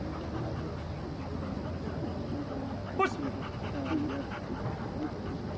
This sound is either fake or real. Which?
real